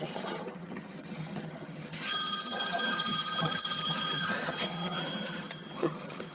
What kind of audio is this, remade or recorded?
remade